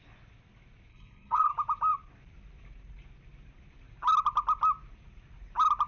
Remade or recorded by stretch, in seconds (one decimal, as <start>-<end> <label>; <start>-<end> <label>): 0.0-0.9 recorded; 0.9-1.5 remade; 1.5-5.9 recorded